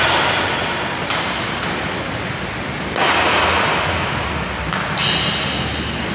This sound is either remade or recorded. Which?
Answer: recorded